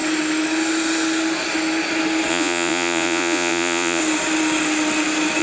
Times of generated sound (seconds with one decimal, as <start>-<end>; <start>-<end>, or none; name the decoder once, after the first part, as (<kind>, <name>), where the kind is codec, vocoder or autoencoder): 2.3-4.0 (vocoder, Vocos)